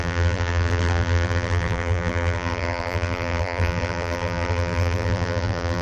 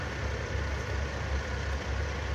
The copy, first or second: first